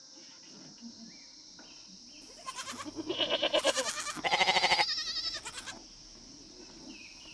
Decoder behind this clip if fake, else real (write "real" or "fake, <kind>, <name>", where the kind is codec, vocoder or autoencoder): real